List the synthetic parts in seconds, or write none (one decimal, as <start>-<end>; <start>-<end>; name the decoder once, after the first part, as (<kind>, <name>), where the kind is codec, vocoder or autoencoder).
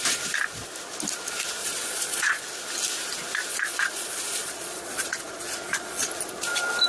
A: 1.6-2.4 (vocoder, Vocos); 3.5-6.1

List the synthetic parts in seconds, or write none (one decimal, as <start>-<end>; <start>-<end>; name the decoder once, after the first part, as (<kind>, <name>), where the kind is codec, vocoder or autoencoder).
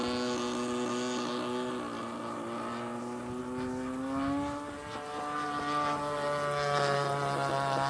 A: none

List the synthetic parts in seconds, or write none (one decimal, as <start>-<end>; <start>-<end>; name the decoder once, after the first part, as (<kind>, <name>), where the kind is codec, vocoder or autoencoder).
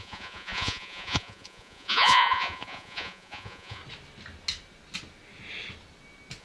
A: 0.0-3.8 (vocoder, Vocos)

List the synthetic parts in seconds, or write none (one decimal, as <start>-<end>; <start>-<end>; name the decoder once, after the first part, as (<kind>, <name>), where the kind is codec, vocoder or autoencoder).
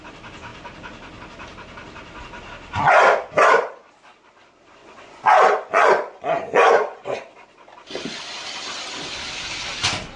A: 4.8-7.1 (vocoder, Vocos)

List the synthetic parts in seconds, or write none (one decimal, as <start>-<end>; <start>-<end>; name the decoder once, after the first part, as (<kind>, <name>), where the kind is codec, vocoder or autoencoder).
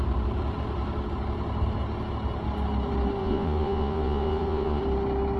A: 3.2-4.8 (vocoder, Vocos)